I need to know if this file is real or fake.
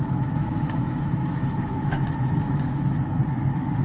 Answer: fake